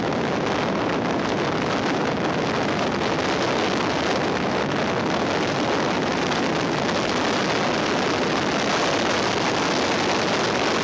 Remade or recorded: recorded